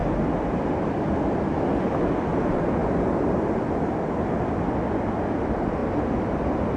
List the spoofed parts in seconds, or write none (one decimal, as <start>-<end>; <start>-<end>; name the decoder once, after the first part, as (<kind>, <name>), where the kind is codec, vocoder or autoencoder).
none